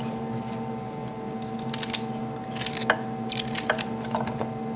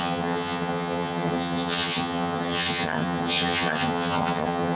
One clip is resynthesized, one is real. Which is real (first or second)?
first